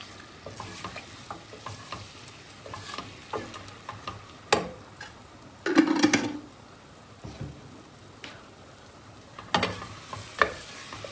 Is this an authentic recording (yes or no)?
yes